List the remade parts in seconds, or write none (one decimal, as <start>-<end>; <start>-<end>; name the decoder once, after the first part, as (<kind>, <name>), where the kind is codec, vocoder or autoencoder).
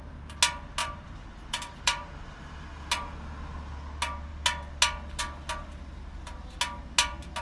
0.8-2.4 (vocoder, BigVGAN v2)